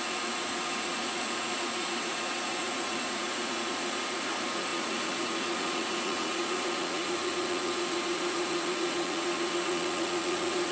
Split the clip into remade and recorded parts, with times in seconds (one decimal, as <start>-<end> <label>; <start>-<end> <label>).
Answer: 0.0-10.7 remade